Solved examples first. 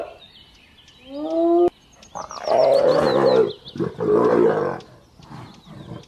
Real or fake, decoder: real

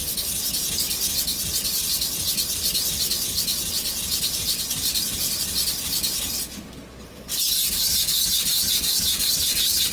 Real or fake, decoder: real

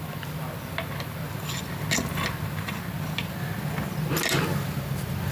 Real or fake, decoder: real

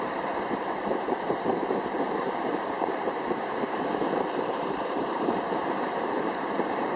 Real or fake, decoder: fake, vocoder, BigVGAN v2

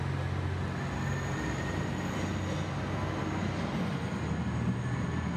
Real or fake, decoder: real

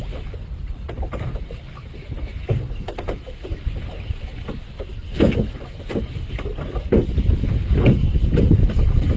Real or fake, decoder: real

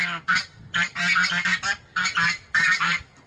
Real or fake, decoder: fake, vocoder, BigVGAN v2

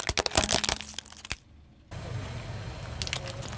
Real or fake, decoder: real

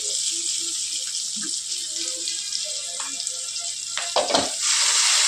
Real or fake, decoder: real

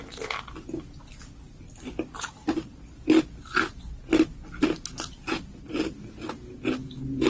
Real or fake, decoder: real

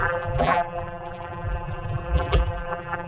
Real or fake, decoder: fake, vocoder, BigVGAN v2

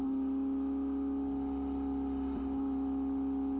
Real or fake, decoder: real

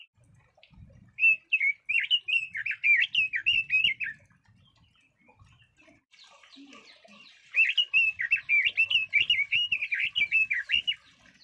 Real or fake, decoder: real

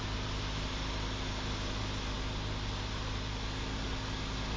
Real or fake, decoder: real